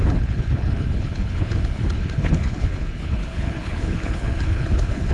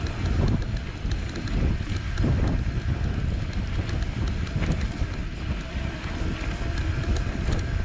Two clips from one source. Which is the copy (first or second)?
first